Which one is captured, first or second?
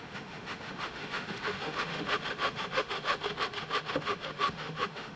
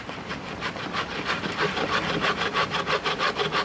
second